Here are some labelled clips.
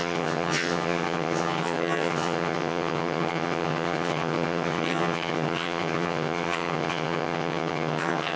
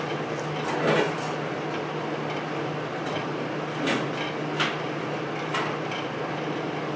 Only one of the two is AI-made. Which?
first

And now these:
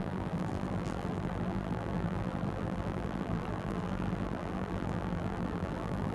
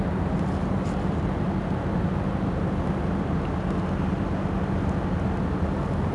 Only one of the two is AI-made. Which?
first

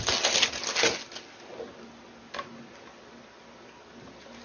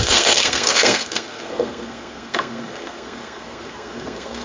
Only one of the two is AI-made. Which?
second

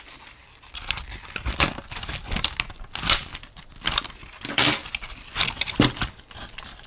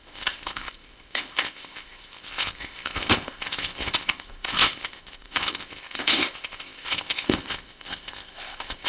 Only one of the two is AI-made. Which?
second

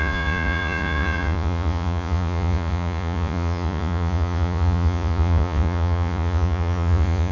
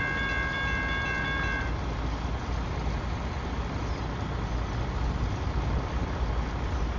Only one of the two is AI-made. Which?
first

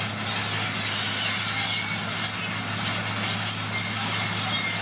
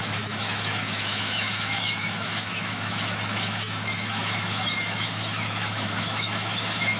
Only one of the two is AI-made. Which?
second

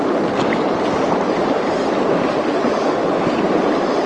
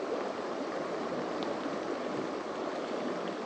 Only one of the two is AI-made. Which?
second